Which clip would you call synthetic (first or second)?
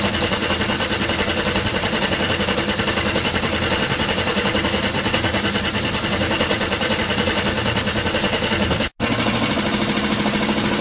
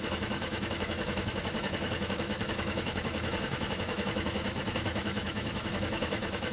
second